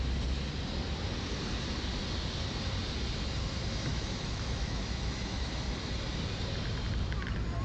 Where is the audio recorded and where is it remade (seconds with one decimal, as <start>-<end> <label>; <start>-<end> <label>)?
0.0-3.9 recorded; 3.9-5.5 remade; 5.5-7.6 recorded